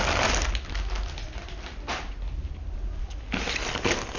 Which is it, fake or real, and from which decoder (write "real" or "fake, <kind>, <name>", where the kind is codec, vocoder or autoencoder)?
real